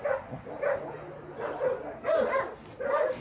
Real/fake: real